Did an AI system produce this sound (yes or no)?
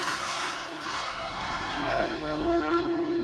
yes